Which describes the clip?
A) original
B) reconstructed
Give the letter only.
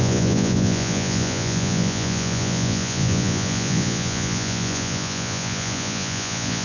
B